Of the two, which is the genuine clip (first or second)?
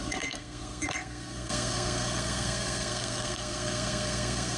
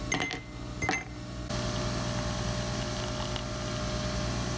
second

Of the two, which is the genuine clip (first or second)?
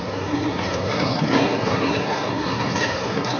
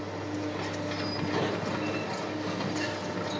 second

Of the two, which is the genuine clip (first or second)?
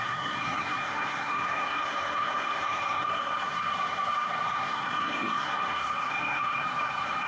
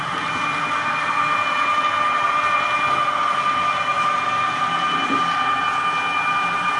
second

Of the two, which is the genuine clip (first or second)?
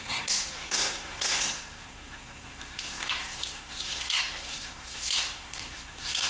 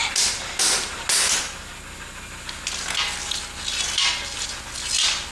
second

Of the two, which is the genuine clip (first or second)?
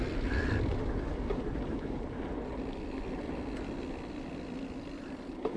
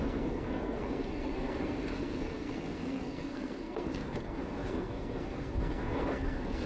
first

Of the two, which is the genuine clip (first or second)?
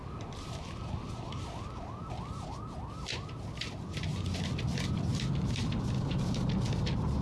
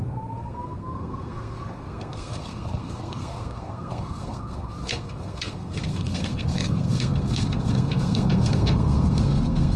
first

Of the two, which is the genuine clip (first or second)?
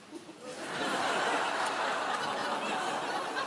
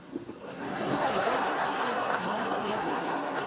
first